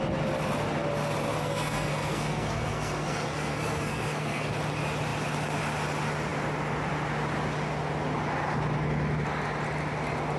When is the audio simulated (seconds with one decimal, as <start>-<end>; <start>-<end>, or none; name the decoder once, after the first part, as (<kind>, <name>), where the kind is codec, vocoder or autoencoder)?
1.4-4.5 (codec, SNAC)